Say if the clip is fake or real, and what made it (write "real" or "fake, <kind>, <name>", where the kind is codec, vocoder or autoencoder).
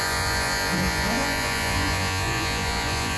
fake, vocoder, Vocos